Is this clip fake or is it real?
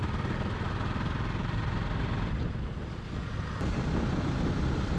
real